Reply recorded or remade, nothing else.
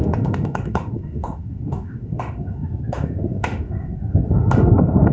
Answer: remade